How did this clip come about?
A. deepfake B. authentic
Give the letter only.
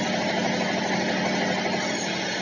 B